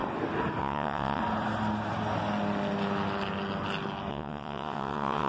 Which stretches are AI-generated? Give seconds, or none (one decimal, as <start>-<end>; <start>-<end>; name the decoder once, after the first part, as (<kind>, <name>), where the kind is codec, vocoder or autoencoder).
0.6-1.2 (vocoder, WaveNeXt); 4.1-5.3